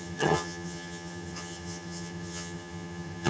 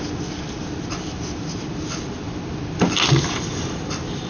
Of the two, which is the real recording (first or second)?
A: second